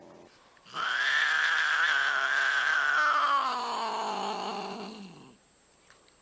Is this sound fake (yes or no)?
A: no